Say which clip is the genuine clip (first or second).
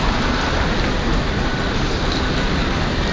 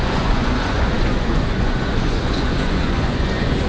first